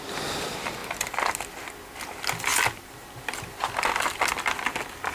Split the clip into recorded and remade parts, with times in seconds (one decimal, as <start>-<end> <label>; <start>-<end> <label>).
0.0-5.1 recorded